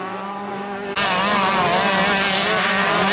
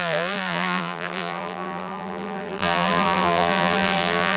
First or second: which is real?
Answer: first